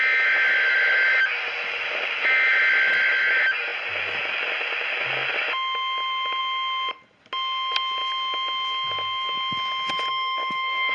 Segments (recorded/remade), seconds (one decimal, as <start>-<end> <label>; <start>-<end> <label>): 0.0-10.1 recorded; 10.1-10.9 remade

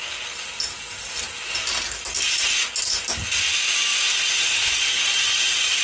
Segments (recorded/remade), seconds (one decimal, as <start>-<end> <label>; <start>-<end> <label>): 0.0-3.9 recorded; 3.9-5.8 remade

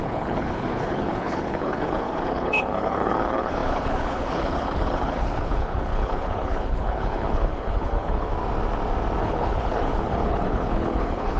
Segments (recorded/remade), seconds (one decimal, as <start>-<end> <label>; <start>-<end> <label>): 0.0-8.3 remade; 8.3-9.2 recorded; 9.2-11.4 remade

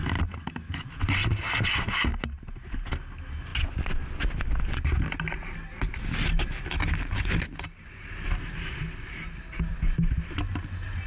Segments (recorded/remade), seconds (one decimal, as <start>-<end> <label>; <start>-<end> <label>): 0.0-11.1 recorded

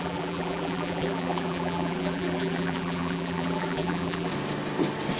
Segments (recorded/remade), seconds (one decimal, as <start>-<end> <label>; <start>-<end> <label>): 0.0-4.3 remade; 4.3-5.2 recorded